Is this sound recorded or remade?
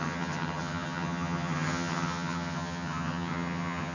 remade